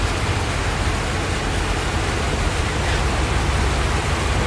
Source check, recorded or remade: recorded